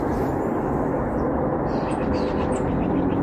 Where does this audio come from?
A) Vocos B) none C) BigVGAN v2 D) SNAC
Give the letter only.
B